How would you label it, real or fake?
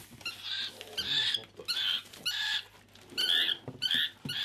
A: real